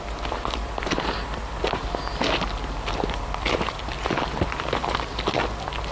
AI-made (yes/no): no